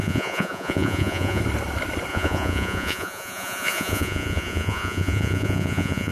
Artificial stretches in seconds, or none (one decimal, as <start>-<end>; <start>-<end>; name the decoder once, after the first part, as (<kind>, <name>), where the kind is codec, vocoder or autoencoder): 0.0-1.4 (vocoder, Vocos); 2.1-6.1